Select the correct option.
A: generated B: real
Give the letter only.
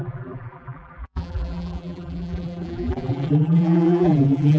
A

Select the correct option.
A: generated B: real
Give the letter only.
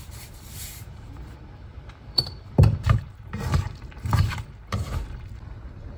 A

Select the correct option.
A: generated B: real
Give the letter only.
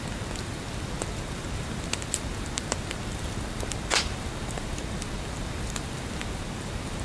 B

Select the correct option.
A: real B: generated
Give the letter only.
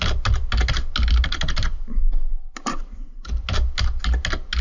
A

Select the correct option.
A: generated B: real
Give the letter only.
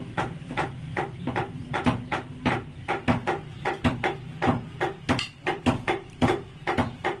A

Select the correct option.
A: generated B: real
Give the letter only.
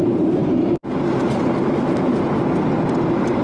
A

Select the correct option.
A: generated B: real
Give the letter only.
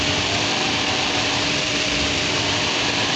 A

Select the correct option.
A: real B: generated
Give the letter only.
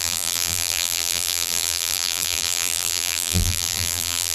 B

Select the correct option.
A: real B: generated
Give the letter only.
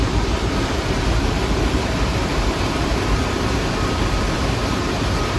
B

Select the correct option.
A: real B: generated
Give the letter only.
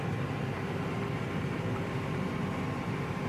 B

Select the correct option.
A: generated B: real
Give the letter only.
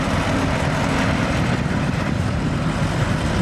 A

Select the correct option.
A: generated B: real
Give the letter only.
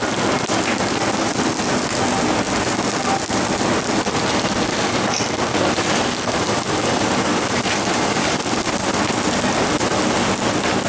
B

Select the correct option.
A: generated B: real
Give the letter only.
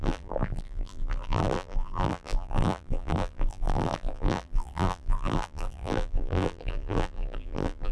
A